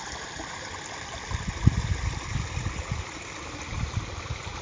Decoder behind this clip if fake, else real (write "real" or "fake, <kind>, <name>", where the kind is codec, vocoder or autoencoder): real